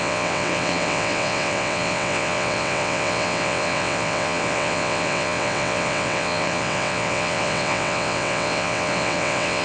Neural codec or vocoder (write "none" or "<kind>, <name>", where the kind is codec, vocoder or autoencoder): vocoder, WaveNeXt